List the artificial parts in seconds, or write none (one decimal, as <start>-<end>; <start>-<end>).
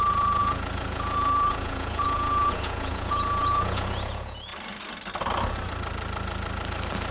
0.0-4.5